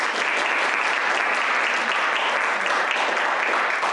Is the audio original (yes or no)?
yes